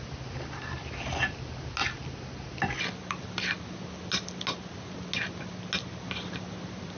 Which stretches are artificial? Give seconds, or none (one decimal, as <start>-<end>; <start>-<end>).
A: none